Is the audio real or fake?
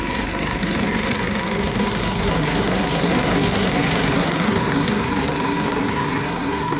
fake